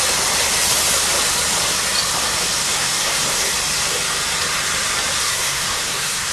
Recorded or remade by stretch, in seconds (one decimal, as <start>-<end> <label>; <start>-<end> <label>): 0.0-2.6 recorded; 2.6-3.5 remade; 3.5-5.2 recorded; 5.2-6.3 remade

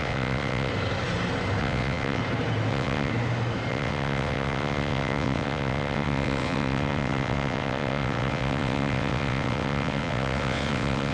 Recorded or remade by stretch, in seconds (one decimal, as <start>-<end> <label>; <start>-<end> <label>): 0.0-0.7 remade; 0.7-1.6 recorded; 1.6-2.2 remade; 2.2-2.7 recorded; 2.7-3.1 remade; 3.1-3.7 recorded; 3.7-11.1 remade

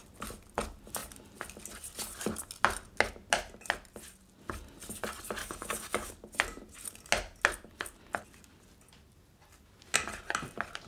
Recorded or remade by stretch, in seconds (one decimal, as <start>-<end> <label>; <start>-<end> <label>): 0.0-5.4 recorded; 5.4-6.1 remade; 6.1-10.9 recorded